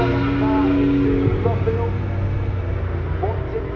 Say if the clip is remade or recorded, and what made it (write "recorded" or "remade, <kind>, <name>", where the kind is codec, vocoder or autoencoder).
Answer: recorded